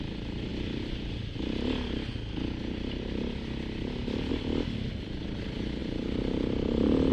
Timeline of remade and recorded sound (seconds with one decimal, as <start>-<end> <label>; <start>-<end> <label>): 0.0-7.1 recorded